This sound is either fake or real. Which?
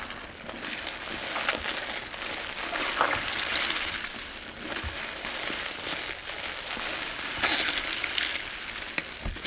real